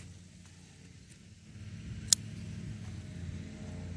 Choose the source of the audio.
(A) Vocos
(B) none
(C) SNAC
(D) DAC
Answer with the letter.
B